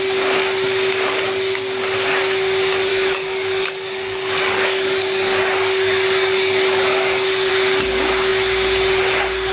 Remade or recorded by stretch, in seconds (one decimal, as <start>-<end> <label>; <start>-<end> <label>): 0.0-2.9 recorded; 2.9-7.5 remade; 7.5-9.5 recorded